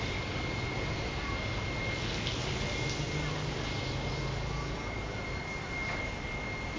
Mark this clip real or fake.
real